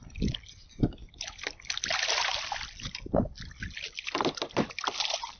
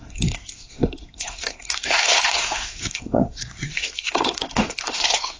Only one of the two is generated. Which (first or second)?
second